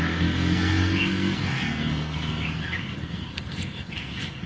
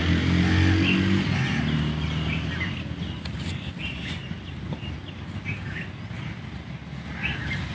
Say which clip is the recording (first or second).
second